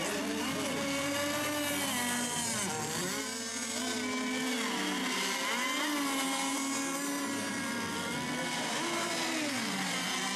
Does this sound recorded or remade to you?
recorded